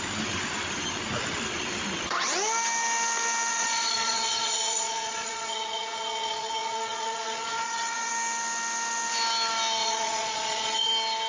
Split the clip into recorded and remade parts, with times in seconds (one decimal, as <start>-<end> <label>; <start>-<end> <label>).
0.0-3.5 recorded; 3.5-8.1 remade; 8.1-9.8 recorded; 9.8-10.9 remade; 10.9-11.3 recorded